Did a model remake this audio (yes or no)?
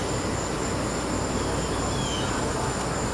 no